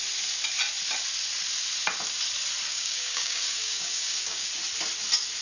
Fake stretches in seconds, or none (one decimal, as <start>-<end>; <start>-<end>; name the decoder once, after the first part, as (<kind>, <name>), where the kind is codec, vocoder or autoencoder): 2.7-4.5 (codec, DAC)